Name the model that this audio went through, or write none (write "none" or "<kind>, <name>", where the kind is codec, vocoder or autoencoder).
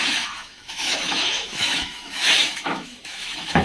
autoencoder, DAC-VAE